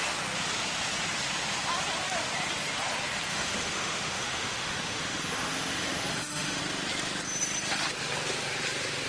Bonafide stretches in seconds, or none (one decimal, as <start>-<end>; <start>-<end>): 0.0-3.3; 6.6-9.1